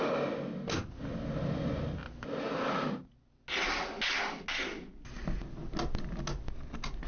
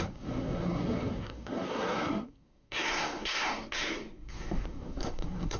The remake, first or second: second